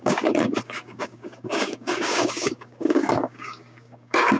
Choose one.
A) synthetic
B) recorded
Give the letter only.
A